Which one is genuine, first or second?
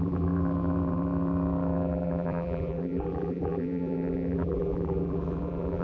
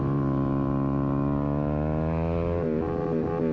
second